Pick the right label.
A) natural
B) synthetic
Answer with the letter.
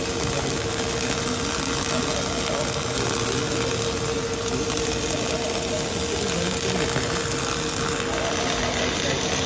A